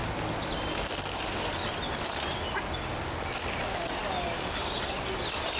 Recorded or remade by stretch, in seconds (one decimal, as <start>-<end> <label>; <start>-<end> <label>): 0.0-5.6 recorded